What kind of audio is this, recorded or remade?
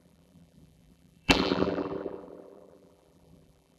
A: remade